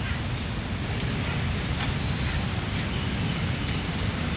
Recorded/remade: recorded